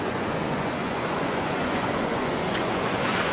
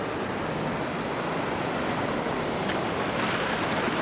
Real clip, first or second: second